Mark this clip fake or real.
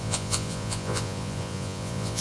fake